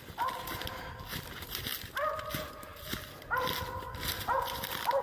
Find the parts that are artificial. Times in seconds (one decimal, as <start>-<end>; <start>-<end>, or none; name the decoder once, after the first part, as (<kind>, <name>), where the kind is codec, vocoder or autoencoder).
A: none